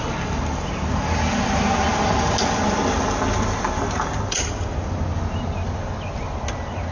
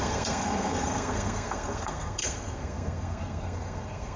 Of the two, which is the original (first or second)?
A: first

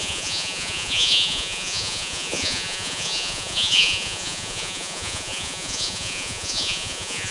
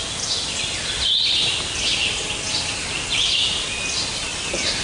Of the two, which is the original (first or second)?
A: second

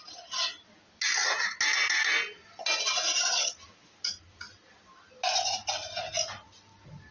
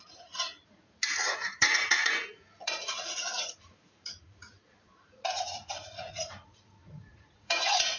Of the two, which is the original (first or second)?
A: first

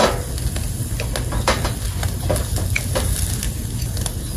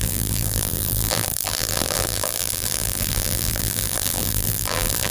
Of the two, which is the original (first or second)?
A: first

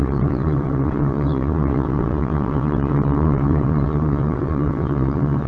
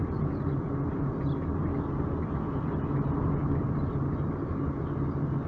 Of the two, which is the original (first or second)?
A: second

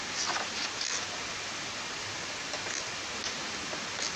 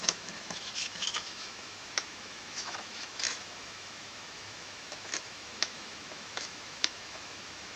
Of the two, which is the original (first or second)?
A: first